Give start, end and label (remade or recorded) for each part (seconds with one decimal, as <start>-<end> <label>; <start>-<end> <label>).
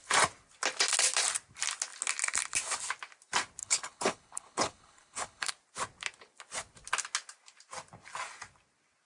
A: 0.0-3.6 recorded; 3.6-5.5 remade; 5.5-9.0 recorded